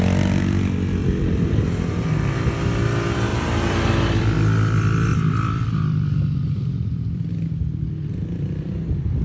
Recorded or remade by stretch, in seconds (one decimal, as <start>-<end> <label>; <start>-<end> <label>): 0.0-1.0 recorded; 1.0-1.6 remade; 1.6-3.3 recorded; 3.3-4.2 remade; 4.2-5.1 recorded; 5.1-7.3 remade; 7.3-9.2 recorded